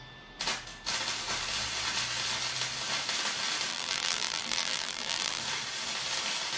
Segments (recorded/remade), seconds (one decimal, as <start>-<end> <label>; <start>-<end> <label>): 0.0-3.7 recorded; 3.7-5.4 remade; 5.4-6.6 recorded